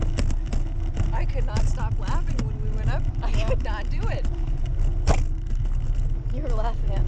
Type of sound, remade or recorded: recorded